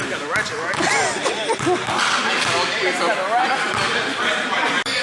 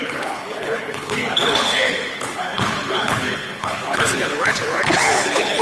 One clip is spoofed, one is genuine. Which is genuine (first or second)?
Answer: first